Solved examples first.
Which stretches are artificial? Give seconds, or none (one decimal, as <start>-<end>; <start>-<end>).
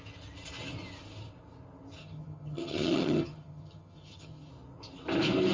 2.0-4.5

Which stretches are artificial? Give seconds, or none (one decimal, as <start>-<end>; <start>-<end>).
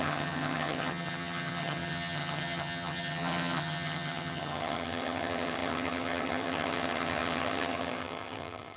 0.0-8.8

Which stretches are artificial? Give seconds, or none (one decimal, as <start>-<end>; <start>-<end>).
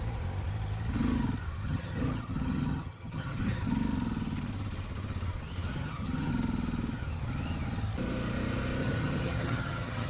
1.7-3.6; 5.7-6.3; 8.8-10.1